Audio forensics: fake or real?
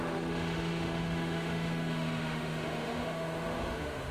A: fake